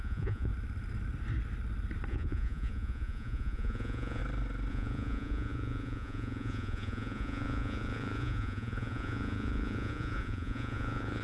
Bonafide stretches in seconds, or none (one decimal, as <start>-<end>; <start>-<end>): 0.5-2.1; 4.2-4.7